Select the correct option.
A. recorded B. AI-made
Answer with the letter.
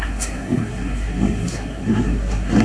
B